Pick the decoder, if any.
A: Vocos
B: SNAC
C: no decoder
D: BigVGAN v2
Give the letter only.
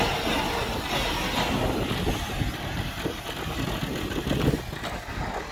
C